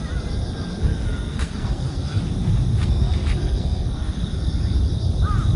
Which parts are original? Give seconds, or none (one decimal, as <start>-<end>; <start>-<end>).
0.0-0.8; 2.2-2.8; 4.2-5.6